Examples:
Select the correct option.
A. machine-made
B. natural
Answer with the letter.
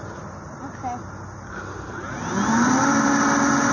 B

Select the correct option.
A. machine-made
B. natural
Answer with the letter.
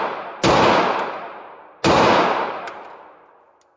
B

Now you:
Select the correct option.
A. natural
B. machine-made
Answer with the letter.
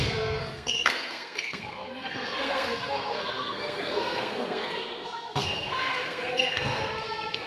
B